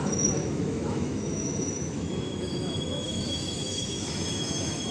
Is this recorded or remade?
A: remade